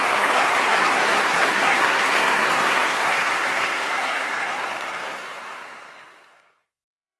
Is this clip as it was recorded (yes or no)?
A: no